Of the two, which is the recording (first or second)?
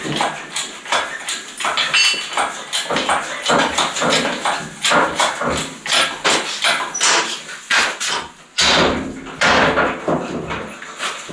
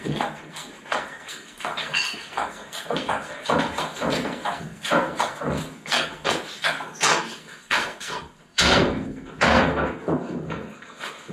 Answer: first